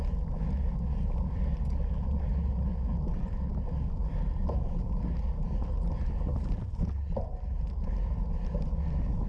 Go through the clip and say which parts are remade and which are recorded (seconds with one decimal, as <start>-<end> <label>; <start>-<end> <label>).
0.0-9.3 recorded